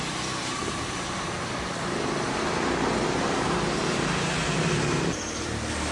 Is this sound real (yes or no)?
no